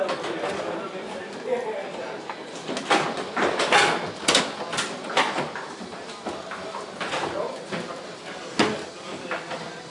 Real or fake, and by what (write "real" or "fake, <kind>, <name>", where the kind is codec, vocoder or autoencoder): real